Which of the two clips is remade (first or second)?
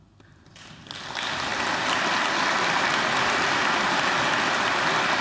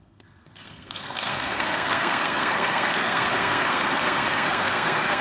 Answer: second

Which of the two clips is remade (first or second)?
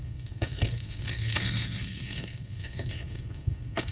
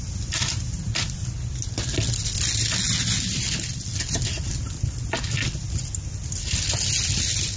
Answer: first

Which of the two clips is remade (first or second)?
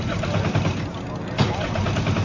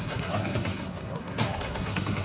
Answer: second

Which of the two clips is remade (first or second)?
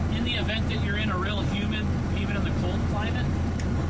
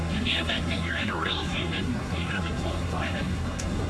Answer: second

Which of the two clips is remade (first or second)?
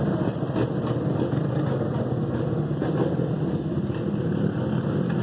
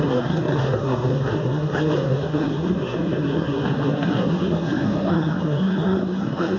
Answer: second